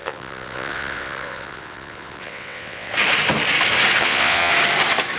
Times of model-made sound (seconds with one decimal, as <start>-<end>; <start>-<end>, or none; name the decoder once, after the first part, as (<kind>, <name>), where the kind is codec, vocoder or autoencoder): 0.0-2.9 (vocoder, WaveNeXt); 4.0-4.5